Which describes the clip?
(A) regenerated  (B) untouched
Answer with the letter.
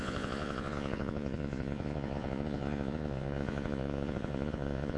A